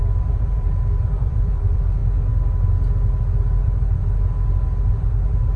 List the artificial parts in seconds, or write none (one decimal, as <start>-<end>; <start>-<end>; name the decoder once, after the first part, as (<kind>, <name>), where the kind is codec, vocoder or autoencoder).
0.0-2.0 (vocoder, BigVGAN v2); 3.6-4.0; 5.0-5.6